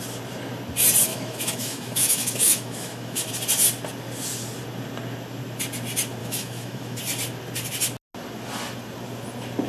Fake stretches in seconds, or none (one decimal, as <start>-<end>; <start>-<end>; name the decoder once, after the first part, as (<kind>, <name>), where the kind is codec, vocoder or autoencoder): 1.1-3.3 (autoencoder, DAC-VAE); 6.2-7.0